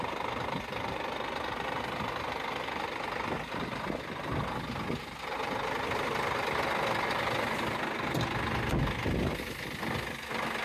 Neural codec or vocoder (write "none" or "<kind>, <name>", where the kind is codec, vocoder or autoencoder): none